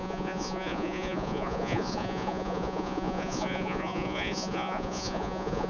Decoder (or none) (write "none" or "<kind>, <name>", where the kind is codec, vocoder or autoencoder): vocoder, Vocos